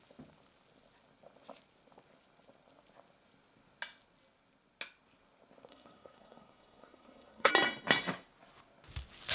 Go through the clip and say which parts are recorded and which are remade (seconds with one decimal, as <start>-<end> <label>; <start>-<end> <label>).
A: 0.0-5.7 recorded; 5.7-7.5 remade; 7.5-9.3 recorded